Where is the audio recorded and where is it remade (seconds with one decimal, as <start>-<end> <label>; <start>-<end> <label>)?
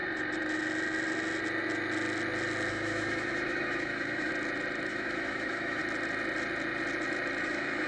0.0-2.7 recorded; 2.7-4.3 remade; 4.3-4.9 recorded; 4.9-5.8 remade; 5.8-7.4 recorded; 7.4-7.9 remade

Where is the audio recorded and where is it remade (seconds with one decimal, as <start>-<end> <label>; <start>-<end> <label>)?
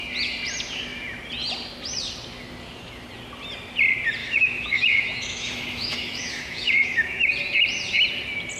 0.0-4.2 recorded; 4.2-7.3 remade; 7.3-8.6 recorded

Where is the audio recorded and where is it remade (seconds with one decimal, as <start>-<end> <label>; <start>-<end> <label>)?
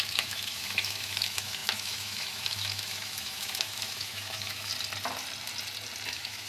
0.0-4.7 remade; 4.7-6.1 recorded; 6.1-6.5 remade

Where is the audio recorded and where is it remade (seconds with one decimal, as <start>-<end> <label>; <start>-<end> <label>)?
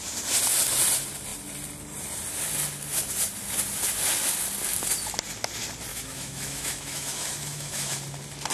0.0-5.9 recorded; 5.9-8.0 remade; 8.0-8.5 recorded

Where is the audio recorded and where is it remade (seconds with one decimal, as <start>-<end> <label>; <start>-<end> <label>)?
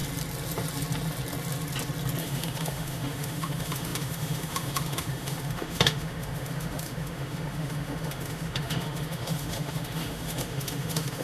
0.0-2.2 recorded; 2.2-11.2 remade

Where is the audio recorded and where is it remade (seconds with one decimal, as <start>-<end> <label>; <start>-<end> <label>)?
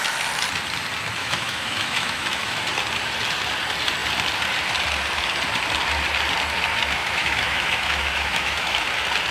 0.0-1.2 recorded; 1.2-2.6 remade; 2.6-7.0 recorded; 7.0-8.9 remade; 8.9-9.3 recorded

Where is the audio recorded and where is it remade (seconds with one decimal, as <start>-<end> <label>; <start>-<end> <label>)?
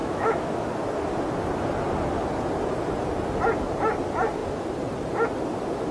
0.0-0.5 remade; 0.5-5.9 recorded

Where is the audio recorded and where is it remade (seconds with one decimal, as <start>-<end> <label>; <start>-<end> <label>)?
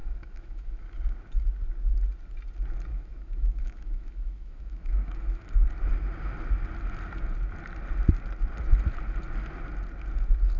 0.0-0.8 remade; 0.8-2.9 recorded; 2.9-5.4 remade; 5.4-10.6 recorded